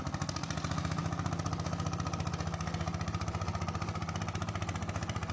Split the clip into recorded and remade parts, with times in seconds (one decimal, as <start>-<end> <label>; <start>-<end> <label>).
0.0-5.3 recorded